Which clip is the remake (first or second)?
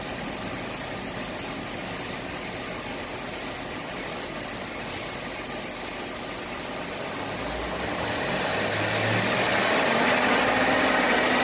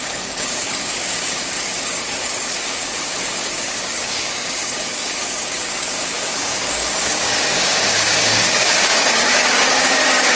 second